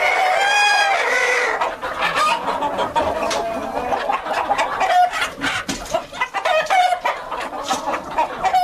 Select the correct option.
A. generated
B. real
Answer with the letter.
B